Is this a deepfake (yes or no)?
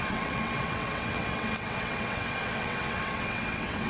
yes